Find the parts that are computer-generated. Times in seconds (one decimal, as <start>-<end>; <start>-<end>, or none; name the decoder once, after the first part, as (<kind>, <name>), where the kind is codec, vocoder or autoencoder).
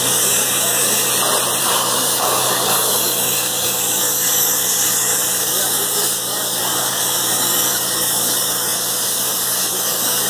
0.0-1.1 (codec, DAC); 1.6-10.3